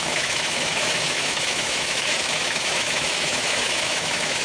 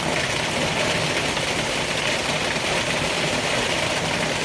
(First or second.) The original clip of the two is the second